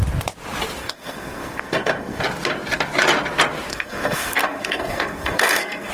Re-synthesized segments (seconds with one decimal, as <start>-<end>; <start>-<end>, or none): 0.8-2.2; 3.7-5.9